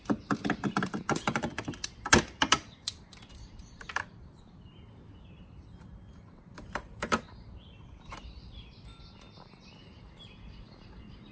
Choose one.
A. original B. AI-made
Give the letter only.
A